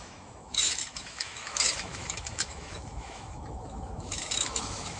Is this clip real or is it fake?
fake